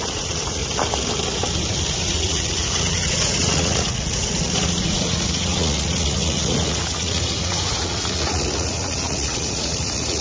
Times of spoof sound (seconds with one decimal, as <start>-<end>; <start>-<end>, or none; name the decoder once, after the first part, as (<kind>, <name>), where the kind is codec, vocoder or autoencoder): 0.0-0.6 (vocoder, Vocos); 2.0-10.2